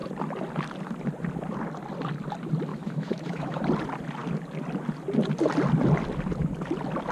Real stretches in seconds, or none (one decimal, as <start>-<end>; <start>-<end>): 0.0-2.7; 3.6-7.1